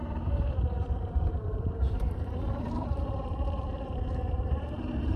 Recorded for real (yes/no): no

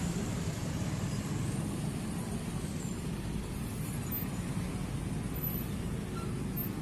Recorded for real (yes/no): yes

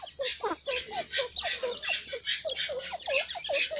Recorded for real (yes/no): yes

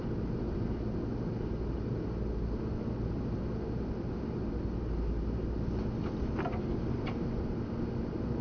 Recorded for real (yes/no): yes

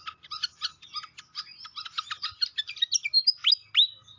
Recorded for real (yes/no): yes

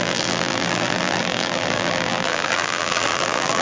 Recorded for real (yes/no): no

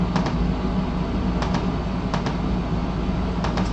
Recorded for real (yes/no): yes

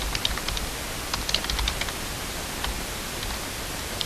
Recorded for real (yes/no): no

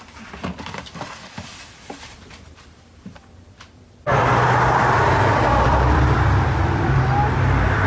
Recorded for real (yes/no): no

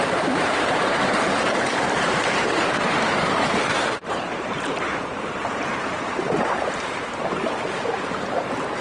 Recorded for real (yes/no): no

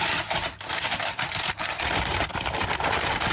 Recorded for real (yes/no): yes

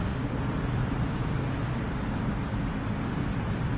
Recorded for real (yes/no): no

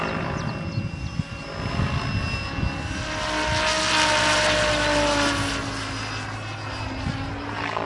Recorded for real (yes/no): yes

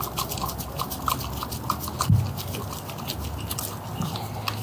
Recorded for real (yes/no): yes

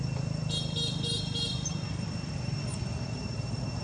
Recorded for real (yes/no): yes